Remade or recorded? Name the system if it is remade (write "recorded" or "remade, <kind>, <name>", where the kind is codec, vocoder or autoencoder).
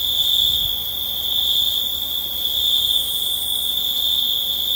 recorded